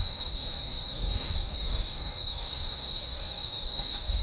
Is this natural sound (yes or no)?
no